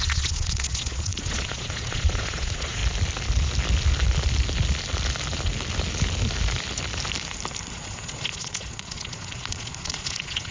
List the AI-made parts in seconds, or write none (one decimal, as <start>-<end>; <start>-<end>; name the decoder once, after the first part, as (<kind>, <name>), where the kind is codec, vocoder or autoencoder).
0.0-2.8 (vocoder, Vocos); 7.7-10.5